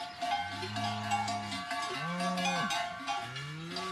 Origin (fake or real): real